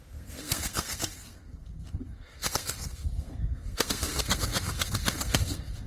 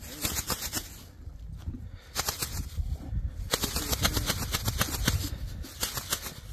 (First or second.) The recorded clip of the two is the second